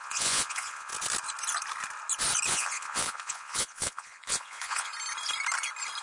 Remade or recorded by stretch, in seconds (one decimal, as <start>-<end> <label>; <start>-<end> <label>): 0.0-0.9 remade; 0.9-2.5 recorded; 2.5-4.9 remade; 4.9-6.0 recorded